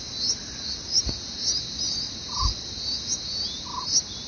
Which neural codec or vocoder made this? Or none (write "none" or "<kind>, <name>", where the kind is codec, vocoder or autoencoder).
none